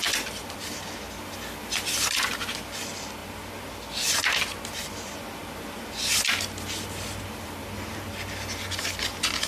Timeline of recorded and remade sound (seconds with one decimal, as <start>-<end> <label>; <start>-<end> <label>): 0.0-9.5 recorded